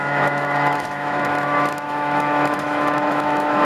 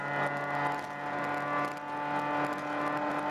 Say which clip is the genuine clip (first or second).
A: second